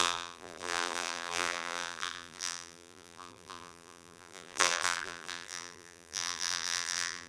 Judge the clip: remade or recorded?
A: remade